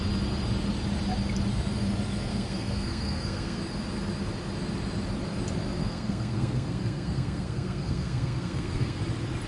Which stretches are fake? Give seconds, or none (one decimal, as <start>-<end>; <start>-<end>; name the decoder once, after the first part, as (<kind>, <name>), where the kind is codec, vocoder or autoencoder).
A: 2.3-3.6 (codec, SNAC); 5.8-9.0